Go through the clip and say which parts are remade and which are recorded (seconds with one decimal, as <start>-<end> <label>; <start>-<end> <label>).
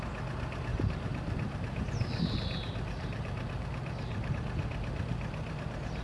0.0-0.7 recorded; 0.7-4.3 remade; 4.3-6.0 recorded